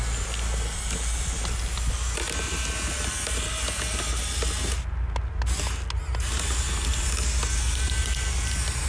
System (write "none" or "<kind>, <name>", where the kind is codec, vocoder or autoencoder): none